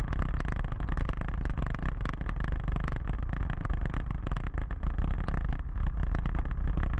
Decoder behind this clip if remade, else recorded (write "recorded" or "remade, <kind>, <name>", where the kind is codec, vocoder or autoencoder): recorded